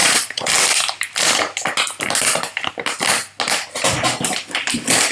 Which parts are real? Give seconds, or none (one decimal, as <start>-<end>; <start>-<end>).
0.5-5.1